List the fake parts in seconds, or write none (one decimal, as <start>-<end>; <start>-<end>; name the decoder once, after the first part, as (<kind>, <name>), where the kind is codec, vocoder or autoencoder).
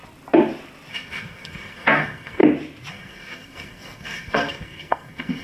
0.9-2.4 (codec, SNAC); 2.9-5.4